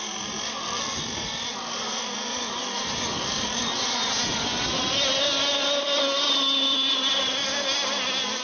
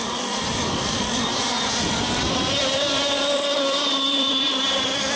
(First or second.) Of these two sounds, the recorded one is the first